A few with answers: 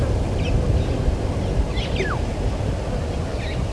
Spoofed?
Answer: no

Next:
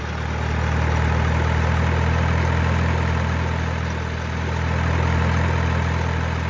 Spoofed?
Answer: no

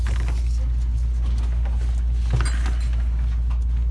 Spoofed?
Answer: no